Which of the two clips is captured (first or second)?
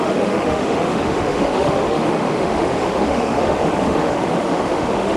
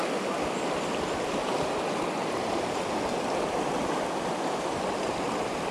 second